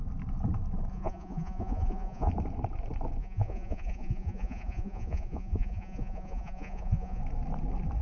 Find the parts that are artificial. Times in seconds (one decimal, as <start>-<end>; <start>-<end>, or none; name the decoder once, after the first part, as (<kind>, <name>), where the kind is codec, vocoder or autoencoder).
0.9-2.3 (vocoder, Vocos); 3.2-7.2